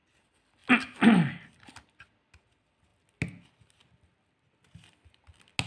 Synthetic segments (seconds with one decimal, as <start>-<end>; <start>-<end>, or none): none